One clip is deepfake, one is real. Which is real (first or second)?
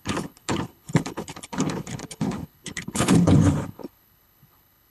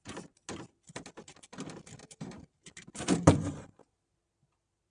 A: second